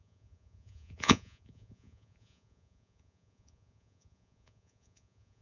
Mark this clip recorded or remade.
remade